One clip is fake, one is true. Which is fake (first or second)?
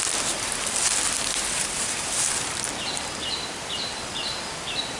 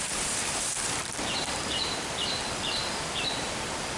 second